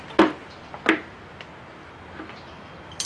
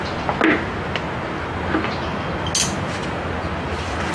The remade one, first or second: first